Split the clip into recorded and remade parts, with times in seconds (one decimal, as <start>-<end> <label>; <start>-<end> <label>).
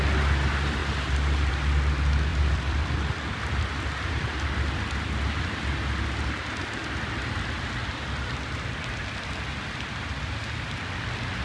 0.0-2.3 recorded; 2.3-3.7 remade; 3.7-11.4 recorded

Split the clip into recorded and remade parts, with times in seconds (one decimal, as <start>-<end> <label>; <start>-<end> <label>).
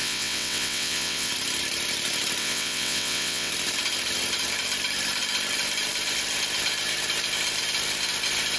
0.0-1.3 remade; 1.3-2.4 recorded; 2.4-3.5 remade; 3.5-8.6 recorded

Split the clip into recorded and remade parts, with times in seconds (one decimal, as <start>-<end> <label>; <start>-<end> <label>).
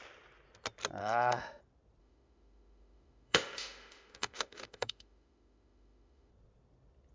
0.0-1.0 recorded; 1.0-1.6 remade; 1.6-2.0 recorded; 2.0-6.3 remade; 6.3-7.1 recorded